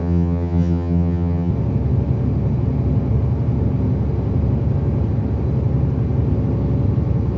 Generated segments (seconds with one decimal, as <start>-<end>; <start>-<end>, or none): 0.0-1.5